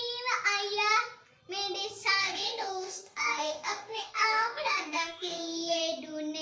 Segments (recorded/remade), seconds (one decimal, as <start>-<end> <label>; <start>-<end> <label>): 0.0-2.2 recorded; 2.2-5.8 remade; 5.8-6.4 recorded